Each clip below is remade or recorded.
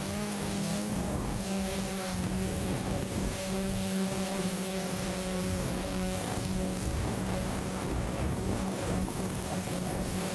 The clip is remade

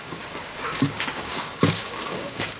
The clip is remade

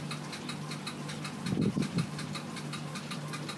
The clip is recorded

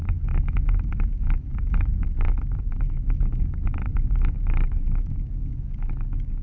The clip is remade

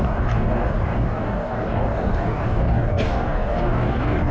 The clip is remade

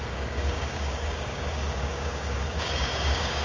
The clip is remade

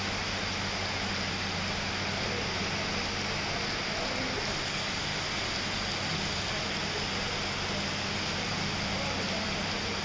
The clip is recorded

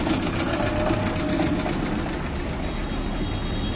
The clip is recorded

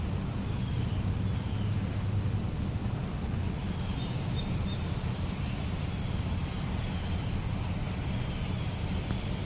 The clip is recorded